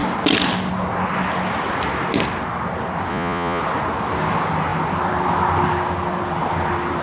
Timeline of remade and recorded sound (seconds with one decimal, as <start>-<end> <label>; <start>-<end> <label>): 0.0-3.1 recorded; 3.1-3.6 remade; 3.6-7.0 recorded